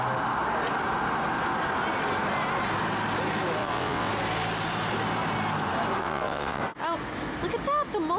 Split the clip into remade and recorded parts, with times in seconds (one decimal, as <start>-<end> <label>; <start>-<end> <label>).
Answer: 0.0-3.6 recorded; 3.6-4.1 remade; 4.1-6.0 recorded; 6.0-6.6 remade; 6.6-8.2 recorded

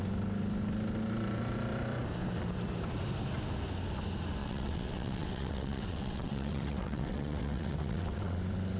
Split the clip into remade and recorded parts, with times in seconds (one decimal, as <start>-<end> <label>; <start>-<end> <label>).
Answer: 0.0-4.4 recorded; 4.4-8.4 remade; 8.4-8.8 recorded

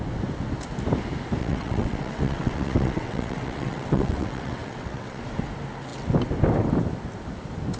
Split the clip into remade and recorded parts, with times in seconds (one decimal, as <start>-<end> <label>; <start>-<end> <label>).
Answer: 0.0-1.4 recorded; 1.4-5.2 remade; 5.2-7.8 recorded

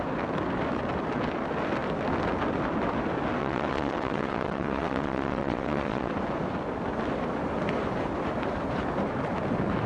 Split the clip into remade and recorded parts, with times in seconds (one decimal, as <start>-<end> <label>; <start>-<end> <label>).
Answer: 0.0-3.4 recorded; 3.4-6.1 remade; 6.1-9.9 recorded

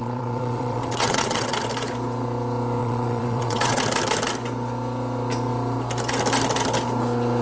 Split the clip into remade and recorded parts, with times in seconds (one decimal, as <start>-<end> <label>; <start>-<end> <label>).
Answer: 0.0-1.5 remade; 1.5-2.8 recorded; 2.8-3.8 remade; 3.8-7.4 recorded

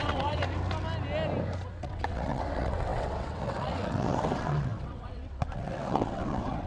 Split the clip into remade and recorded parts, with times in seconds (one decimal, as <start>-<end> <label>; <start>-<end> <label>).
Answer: 0.0-0.4 remade; 0.4-1.8 recorded; 1.8-6.7 remade

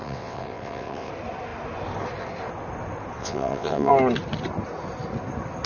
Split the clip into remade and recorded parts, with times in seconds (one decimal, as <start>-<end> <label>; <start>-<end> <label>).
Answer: 0.0-1.1 remade; 1.1-3.2 recorded; 3.2-3.9 remade; 3.9-5.7 recorded